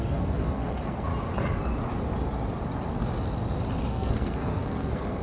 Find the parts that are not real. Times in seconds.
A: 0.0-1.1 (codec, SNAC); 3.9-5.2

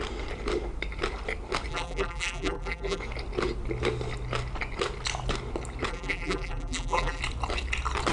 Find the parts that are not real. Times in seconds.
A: 1.7-3.0 (vocoder, BigVGAN v2); 5.9-7.2

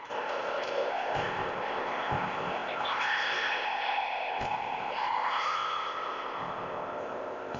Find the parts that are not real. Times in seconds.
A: 0.0-7.6 (codec, ZipCodec)

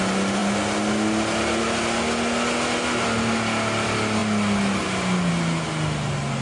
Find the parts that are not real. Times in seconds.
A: none

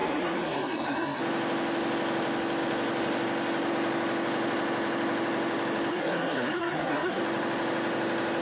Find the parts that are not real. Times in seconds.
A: 0.0-1.2 (codec, SNAC); 5.9-7.2

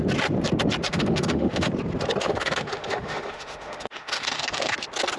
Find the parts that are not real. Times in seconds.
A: 0.9-1.7 (autoencoder, DAC-VAE); 2.2-4.7

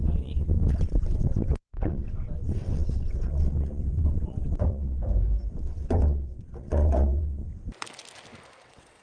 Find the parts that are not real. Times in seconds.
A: 0.0-5.0 (vocoder, WaveNeXt); 5.5-7.5; 8.6-9.0